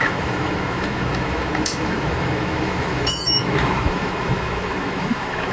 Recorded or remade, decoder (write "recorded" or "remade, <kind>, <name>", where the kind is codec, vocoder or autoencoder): remade, autoencoder, DAC-VAE